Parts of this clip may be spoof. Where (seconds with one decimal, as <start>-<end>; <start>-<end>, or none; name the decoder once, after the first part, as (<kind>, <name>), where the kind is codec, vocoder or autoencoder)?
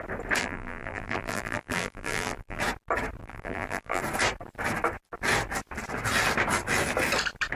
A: 0.4-2.6 (vocoder, BigVGAN v2); 3.2-4.0